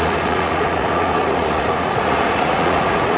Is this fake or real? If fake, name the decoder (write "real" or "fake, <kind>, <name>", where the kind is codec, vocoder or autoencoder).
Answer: fake, vocoder, Vocos